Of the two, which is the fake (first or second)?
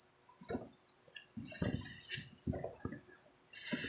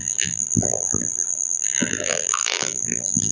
second